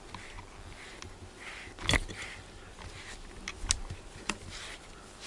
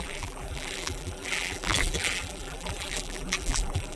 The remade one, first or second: second